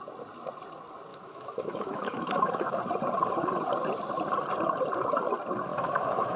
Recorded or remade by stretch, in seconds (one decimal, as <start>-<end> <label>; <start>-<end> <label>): 0.0-1.1 recorded; 1.1-2.8 remade; 2.8-5.7 recorded; 5.7-6.4 remade